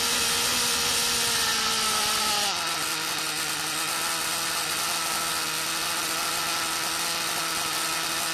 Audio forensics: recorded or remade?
recorded